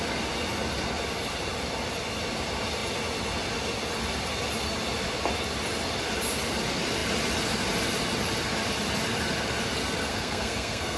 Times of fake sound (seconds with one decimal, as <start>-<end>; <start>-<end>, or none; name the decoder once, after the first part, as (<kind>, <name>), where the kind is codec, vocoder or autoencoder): 10.1-11.0 (codec, SNAC)